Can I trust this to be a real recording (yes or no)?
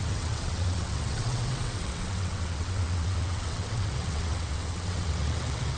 no